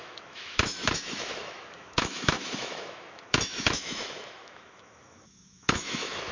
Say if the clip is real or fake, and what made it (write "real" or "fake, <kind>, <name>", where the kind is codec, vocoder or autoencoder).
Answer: fake, autoencoder, DAC-VAE